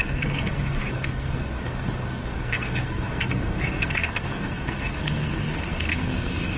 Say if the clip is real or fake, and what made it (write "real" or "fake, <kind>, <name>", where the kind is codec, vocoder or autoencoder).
fake, codec, SNAC